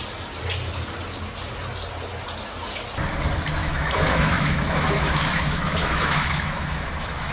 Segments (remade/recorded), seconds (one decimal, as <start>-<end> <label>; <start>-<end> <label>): 0.0-3.6 recorded; 3.6-7.3 remade